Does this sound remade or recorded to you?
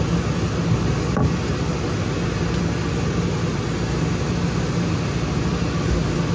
recorded